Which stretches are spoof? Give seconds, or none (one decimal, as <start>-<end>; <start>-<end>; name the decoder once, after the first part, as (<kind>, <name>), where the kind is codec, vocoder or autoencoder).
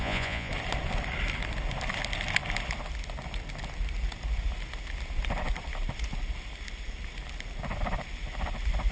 0.0-0.5 (vocoder, Vocos)